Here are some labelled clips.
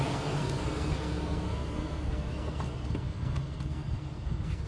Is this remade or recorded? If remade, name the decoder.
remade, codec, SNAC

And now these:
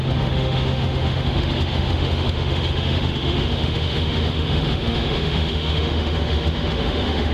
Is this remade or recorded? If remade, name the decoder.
remade, autoencoder, DAC-VAE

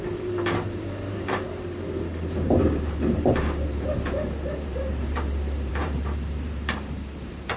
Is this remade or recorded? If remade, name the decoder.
remade, vocoder, BigVGAN v2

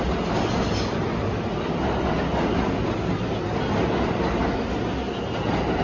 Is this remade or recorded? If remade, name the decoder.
recorded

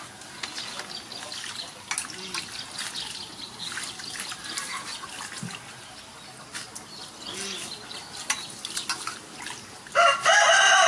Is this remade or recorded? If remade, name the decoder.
recorded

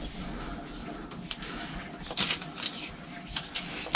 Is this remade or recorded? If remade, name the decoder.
recorded